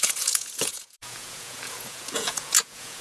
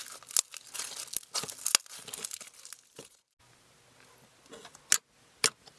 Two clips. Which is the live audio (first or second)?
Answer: second